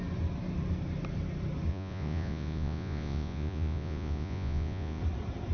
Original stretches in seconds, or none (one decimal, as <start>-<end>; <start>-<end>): 0.0-1.7; 5.0-5.5